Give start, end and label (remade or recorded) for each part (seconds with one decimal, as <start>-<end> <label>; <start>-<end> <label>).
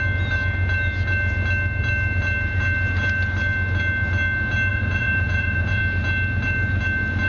0.0-4.7 recorded; 4.7-5.8 remade; 5.8-7.3 recorded